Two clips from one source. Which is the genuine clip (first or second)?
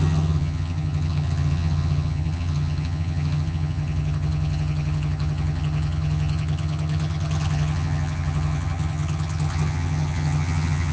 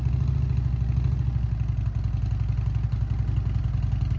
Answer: second